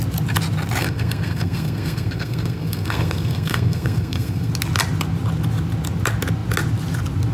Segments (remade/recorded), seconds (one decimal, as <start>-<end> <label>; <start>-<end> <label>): 0.0-0.8 recorded; 0.8-4.5 remade; 4.5-7.3 recorded